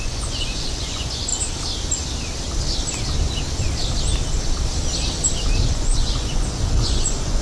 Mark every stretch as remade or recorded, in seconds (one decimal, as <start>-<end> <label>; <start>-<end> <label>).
0.0-1.3 remade; 1.3-5.7 recorded; 5.7-7.4 remade